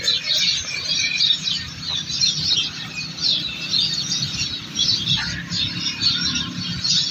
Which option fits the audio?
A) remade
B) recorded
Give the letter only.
B